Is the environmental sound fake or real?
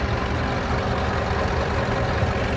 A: real